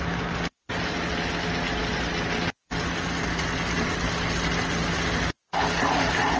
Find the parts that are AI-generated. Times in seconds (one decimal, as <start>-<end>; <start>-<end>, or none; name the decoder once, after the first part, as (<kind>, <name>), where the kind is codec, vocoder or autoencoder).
none